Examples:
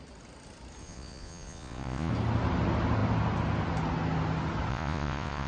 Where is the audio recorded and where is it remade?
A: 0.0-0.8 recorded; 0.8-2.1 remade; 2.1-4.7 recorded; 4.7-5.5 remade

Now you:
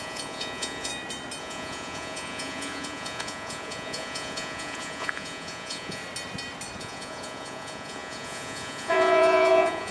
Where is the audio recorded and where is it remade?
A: 0.0-0.9 remade; 0.9-1.4 recorded; 1.4-6.0 remade; 6.0-6.8 recorded; 6.8-9.9 remade

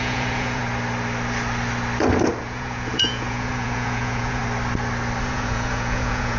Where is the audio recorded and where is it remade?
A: 0.0-0.6 remade; 0.6-2.4 recorded; 2.4-4.4 remade; 4.4-5.2 recorded; 5.2-6.4 remade

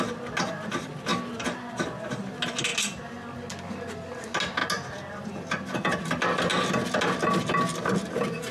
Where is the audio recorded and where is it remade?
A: 0.0-8.5 recorded